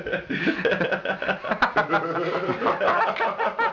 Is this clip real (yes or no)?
yes